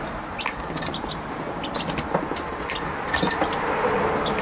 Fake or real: real